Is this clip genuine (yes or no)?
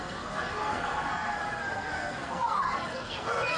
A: no